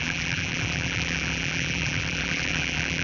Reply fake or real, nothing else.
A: fake